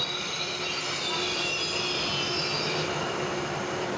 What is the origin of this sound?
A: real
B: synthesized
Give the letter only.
B